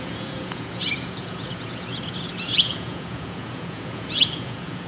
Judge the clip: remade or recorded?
remade